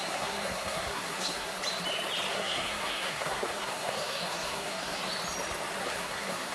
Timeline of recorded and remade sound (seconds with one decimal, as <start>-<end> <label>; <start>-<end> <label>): 0.0-1.6 remade; 1.6-2.3 recorded; 2.3-5.0 remade; 5.0-5.8 recorded; 5.8-6.5 remade